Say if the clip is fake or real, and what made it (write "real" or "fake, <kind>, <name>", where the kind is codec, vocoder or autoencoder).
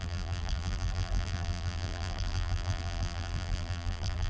fake, vocoder, BigVGAN v2